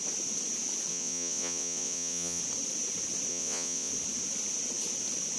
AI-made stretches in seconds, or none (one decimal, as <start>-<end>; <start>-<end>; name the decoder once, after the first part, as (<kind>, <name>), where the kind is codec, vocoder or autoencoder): 0.9-2.4 (vocoder, Vocos); 3.3-3.9